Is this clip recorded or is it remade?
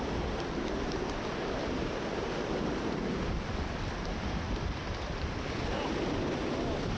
recorded